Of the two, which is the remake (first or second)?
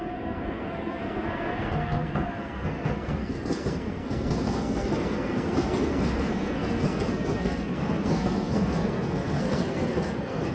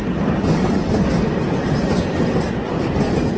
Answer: first